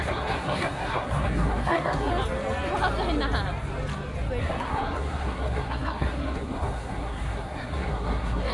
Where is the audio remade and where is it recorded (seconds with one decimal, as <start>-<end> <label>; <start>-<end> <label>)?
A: 0.0-2.1 remade; 2.1-4.4 recorded; 4.4-8.5 remade

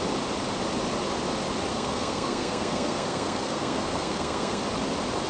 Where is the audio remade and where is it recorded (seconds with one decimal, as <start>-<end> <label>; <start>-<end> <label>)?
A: 0.0-1.7 recorded; 1.7-4.6 remade; 4.6-5.3 recorded